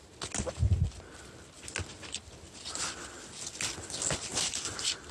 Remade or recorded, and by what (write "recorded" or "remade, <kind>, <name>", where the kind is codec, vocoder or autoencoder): recorded